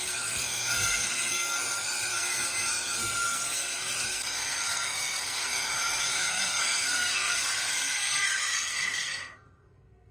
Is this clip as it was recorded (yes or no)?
no